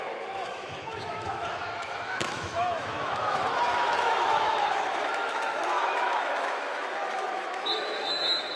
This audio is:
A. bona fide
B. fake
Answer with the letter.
B